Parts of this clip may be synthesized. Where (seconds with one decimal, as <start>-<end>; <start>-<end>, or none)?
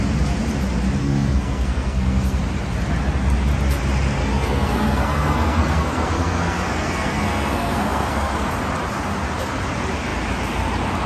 1.0-2.4; 4.2-8.5